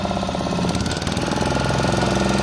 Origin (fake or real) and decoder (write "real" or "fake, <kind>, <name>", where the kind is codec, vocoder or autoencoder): real